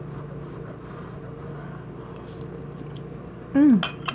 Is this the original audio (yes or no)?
yes